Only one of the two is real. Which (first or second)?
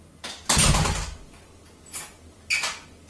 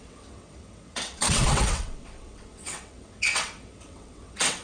first